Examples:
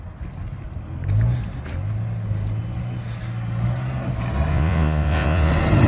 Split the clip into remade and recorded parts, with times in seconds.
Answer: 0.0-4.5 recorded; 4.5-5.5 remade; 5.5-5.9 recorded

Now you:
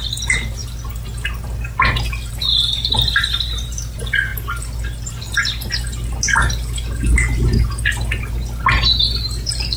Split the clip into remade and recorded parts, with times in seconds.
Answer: 0.0-9.8 recorded

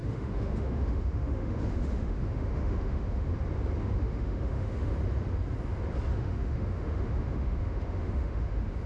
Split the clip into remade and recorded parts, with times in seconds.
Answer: 0.0-3.3 remade; 3.3-3.8 recorded; 3.8-4.9 remade; 4.9-6.1 recorded; 6.1-8.9 remade

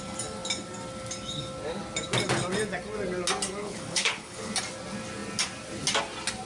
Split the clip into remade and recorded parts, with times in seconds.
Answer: 0.0-3.6 recorded; 3.6-4.5 remade; 4.5-6.4 recorded